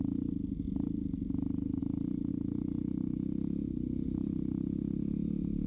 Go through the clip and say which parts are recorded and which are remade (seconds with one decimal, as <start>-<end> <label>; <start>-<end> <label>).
0.0-5.7 recorded